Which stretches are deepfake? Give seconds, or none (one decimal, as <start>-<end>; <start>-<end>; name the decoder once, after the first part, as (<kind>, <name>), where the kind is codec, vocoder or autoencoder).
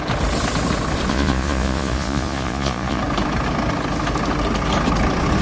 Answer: 1.1-3.0 (vocoder, Vocos)